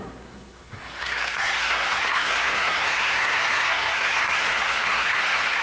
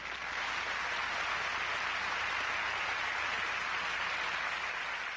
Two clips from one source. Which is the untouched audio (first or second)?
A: second